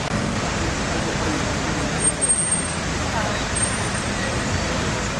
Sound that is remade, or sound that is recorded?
recorded